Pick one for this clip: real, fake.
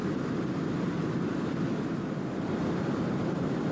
real